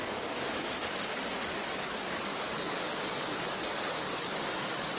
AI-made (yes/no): yes